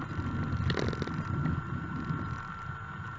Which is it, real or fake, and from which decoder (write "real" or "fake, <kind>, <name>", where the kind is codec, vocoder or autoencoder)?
real